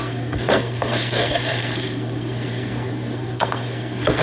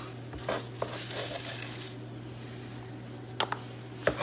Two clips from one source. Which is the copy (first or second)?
first